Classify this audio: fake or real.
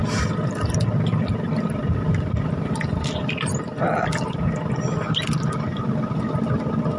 real